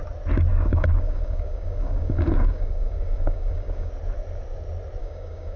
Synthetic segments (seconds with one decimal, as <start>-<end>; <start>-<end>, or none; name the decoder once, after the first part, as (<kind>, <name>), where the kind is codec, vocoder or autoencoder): 0.5-3.9 (codec, DAC); 5.0-5.6